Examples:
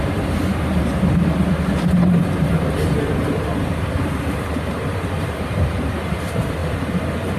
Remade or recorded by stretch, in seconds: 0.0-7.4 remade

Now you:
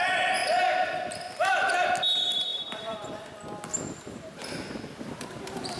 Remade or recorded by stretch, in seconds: 0.0-0.4 recorded; 0.4-1.9 remade; 1.9-2.5 recorded; 2.5-3.2 remade; 3.2-5.8 recorded

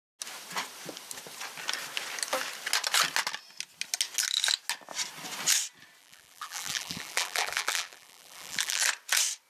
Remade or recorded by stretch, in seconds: 0.0-6.0 recorded; 6.0-8.8 remade; 8.8-9.5 recorded

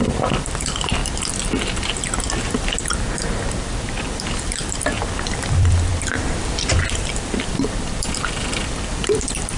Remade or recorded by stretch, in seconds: 0.0-1.0 remade; 1.0-2.8 recorded; 2.8-9.6 remade

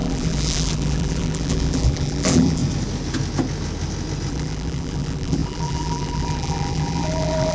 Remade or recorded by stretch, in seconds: 0.0-2.6 remade; 2.6-4.3 recorded; 4.3-7.5 remade